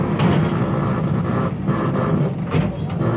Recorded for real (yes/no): yes